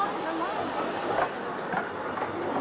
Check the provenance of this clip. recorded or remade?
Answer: recorded